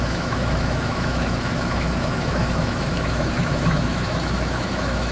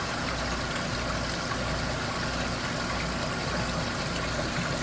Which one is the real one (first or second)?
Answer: second